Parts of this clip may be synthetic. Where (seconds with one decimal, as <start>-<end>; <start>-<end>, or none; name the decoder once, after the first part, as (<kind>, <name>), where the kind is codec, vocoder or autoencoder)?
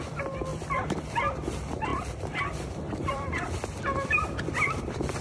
0.0-5.2 (vocoder, BigVGAN v2)